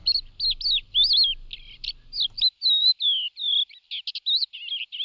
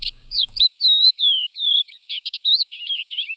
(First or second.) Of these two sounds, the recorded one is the first